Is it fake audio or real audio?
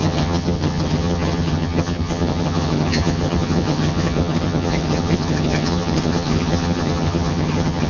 fake